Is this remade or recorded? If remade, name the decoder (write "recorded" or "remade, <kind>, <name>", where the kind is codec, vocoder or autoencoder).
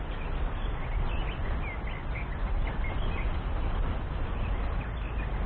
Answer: recorded